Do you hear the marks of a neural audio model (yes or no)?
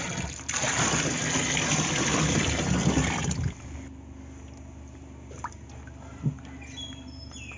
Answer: no